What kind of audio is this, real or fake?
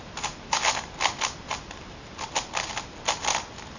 real